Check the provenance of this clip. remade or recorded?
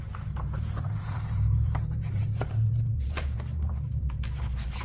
remade